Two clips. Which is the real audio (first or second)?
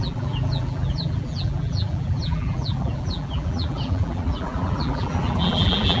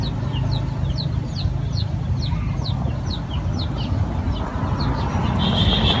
second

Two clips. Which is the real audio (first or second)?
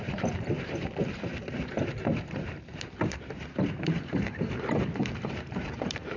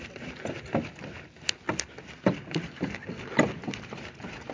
second